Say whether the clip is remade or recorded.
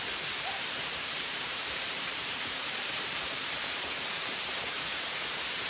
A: remade